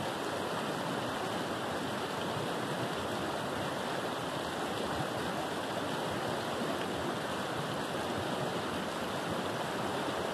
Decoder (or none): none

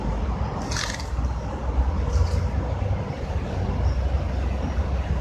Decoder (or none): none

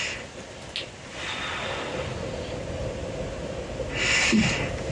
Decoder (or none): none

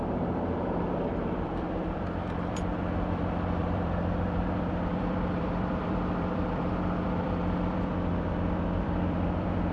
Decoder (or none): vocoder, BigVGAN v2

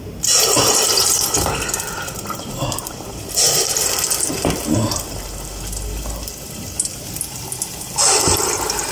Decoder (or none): none